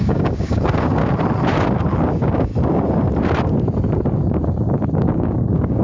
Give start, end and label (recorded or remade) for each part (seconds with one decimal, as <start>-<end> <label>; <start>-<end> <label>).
0.0-1.0 remade; 1.0-2.1 recorded; 2.1-2.5 remade; 2.5-4.9 recorded; 4.9-5.8 remade